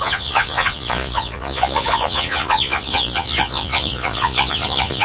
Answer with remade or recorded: remade